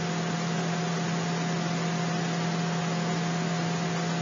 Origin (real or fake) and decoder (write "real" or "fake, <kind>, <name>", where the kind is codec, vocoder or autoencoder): real